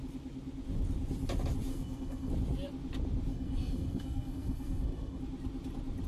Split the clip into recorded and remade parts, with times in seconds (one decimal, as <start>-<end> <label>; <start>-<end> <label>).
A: 0.0-1.7 recorded; 1.7-2.3 remade; 2.3-3.3 recorded; 3.3-5.2 remade; 5.2-6.1 recorded